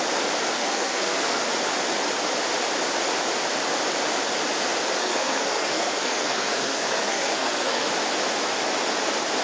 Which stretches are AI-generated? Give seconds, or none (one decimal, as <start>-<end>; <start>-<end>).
0.6-1.4; 5.0-7.9